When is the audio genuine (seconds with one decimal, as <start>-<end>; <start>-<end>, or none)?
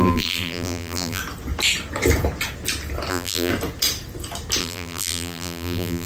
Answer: 1.2-3.1; 3.5-4.6